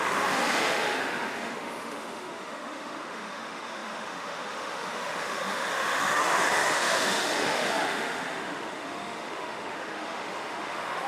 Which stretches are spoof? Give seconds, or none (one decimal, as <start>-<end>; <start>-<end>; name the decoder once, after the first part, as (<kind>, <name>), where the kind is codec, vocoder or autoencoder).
0.0-11.1 (autoencoder, DAC-VAE)